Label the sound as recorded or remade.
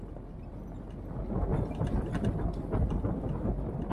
recorded